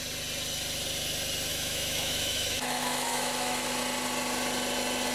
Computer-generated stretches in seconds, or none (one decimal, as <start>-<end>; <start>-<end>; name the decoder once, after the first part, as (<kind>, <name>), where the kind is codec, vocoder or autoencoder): 1.5-3.8 (autoencoder, DAC-VAE)